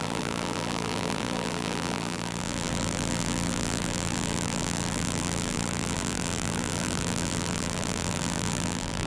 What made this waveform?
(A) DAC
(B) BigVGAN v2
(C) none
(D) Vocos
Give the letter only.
B